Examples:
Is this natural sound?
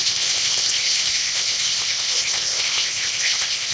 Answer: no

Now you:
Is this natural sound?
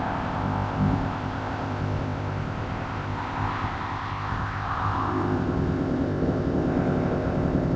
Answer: no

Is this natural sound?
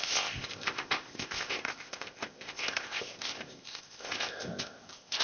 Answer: no